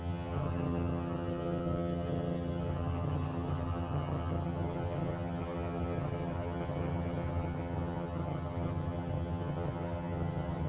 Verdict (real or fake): fake